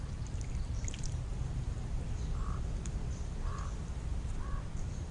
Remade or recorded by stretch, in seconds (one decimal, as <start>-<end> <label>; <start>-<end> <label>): 0.0-1.3 remade; 1.3-4.4 recorded; 4.4-5.1 remade